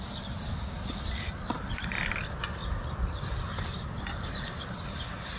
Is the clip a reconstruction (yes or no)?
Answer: no